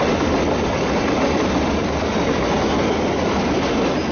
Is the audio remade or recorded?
recorded